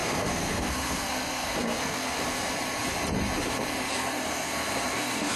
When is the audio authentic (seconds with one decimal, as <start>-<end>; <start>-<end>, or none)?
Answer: 2.2-3.9